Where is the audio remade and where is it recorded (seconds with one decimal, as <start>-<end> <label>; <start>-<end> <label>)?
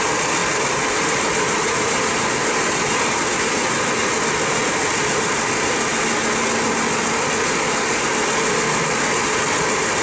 0.0-0.4 recorded; 0.4-3.9 remade; 3.9-10.0 recorded